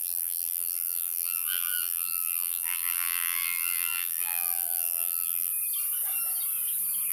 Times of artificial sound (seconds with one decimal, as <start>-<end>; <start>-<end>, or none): 0.0-5.5